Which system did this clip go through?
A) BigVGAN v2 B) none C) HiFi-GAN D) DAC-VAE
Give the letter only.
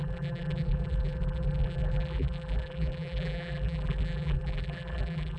A